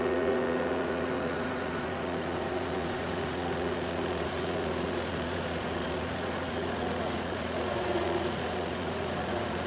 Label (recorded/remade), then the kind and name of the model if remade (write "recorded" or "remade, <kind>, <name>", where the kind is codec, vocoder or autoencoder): remade, vocoder, Vocos